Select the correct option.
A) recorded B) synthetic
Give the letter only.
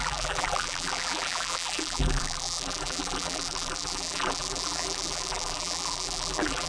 B